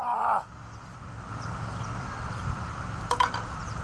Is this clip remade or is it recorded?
remade